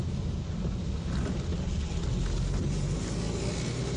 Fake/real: real